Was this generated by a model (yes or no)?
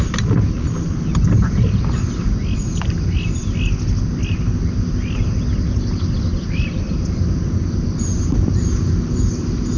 no